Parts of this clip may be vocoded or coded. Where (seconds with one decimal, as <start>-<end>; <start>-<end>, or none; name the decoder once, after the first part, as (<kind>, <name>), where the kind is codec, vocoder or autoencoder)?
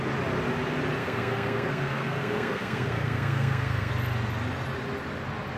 1.0-3.9 (codec, SNAC)